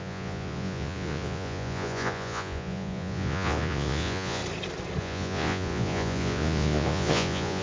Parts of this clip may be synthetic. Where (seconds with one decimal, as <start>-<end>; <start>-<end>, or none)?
0.0-4.4; 5.0-7.6